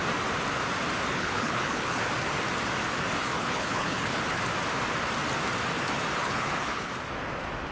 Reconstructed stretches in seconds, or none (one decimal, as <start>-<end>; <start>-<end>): 1.1-2.1; 3.2-4.4; 6.2-6.9